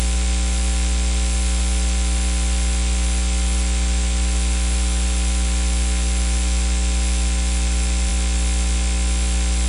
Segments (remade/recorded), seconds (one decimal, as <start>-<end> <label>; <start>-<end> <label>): 0.0-9.7 recorded